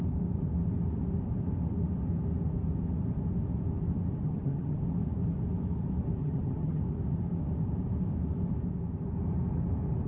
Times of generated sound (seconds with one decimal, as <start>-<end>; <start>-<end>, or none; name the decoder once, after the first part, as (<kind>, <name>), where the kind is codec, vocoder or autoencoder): 4.2-4.8 (vocoder, HiFi-GAN); 6.2-6.8